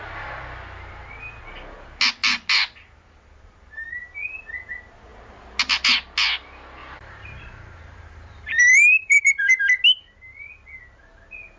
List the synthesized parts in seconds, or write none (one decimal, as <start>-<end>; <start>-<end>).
6.8-9.6